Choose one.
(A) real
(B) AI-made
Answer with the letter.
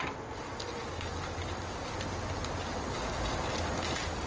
A